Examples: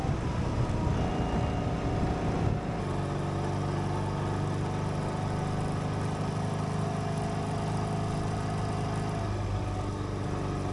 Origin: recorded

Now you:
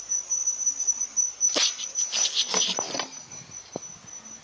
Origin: recorded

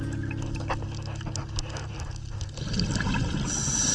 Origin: recorded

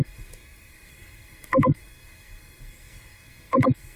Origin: remade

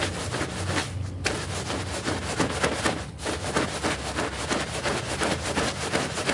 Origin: recorded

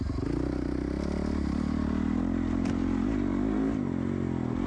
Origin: recorded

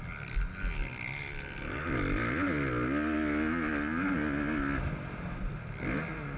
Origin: recorded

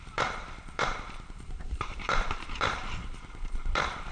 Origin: remade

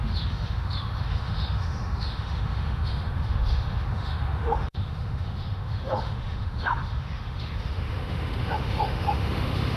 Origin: remade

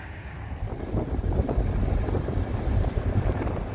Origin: recorded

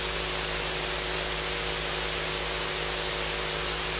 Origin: recorded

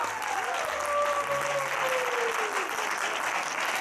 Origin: recorded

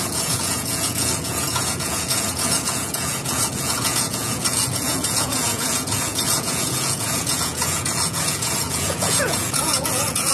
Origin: remade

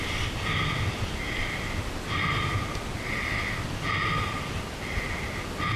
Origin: recorded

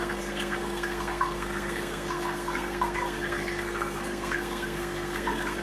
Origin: remade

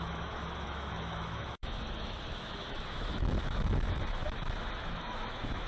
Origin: remade